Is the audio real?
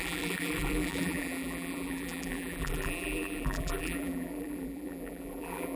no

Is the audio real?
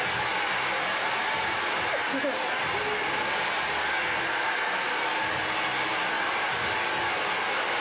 yes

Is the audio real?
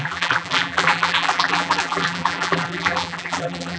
no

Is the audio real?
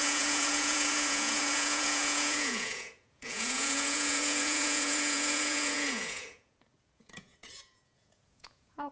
no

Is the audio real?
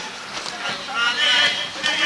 yes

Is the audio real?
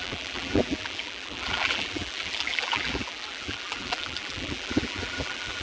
no